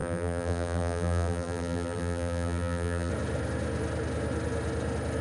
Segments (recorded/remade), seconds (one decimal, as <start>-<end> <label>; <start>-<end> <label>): 0.0-3.1 remade; 3.1-5.2 recorded